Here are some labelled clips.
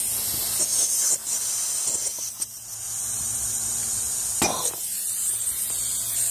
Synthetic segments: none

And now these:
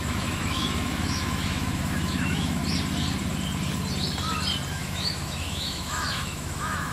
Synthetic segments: 0.0-2.6 (autoencoder, DAC-VAE); 4.7-6.9

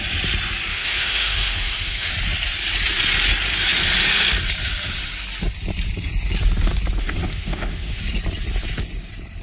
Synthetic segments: 0.7-2.1 (autoencoder, DAC-VAE); 7.0-8.0

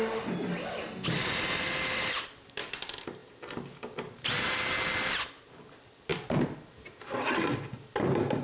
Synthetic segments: none

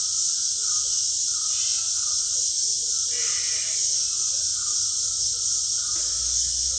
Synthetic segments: none

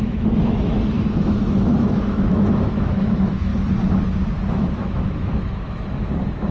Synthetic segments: 0.0-3.5 (autoencoder, DAC-VAE); 4.5-6.5